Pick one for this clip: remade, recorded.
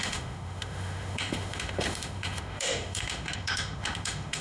remade